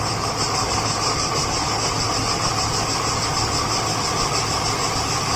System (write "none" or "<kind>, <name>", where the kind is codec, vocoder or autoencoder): none